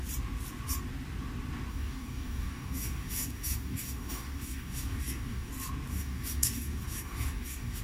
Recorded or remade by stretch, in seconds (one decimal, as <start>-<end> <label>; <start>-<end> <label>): 0.0-1.7 recorded; 1.7-5.5 remade; 5.5-5.9 recorded; 5.9-7.8 remade